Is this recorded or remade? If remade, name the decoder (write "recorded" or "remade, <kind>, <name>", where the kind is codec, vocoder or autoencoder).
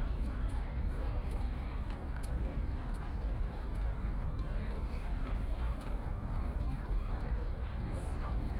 remade, codec, DAC